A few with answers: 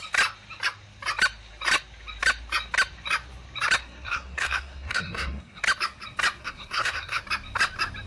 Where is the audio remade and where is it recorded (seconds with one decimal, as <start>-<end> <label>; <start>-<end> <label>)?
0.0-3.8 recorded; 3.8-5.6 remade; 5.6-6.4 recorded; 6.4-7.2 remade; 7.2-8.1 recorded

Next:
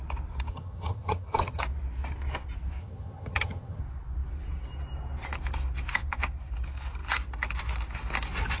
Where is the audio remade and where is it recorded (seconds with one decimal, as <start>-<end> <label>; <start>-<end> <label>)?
0.0-0.5 recorded; 0.5-1.6 remade; 1.6-2.8 recorded; 2.8-3.8 remade; 3.8-8.6 recorded

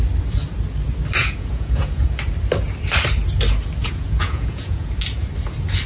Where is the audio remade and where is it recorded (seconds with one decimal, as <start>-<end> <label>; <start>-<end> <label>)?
0.0-1.2 recorded; 1.2-2.1 remade; 2.1-3.8 recorded; 3.8-4.9 remade; 4.9-5.9 recorded

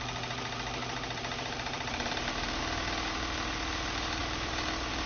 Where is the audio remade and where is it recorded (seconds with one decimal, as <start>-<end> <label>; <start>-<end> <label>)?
0.0-0.8 recorded; 0.8-2.6 remade; 2.6-4.2 recorded; 4.2-5.1 remade